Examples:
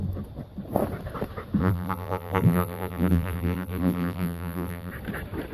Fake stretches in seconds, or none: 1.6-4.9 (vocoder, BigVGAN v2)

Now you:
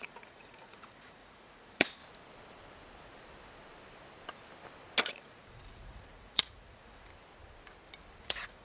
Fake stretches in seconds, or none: 0.0-2.0 (vocoder, Vocos); 5.0-7.1; 8.2-8.6